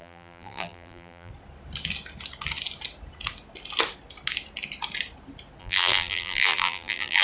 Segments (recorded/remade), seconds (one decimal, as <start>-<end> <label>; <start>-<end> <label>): 0.0-1.3 remade; 1.3-5.6 recorded; 5.6-7.2 remade